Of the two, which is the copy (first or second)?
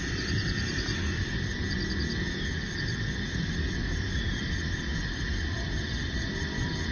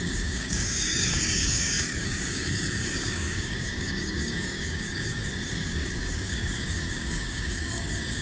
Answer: second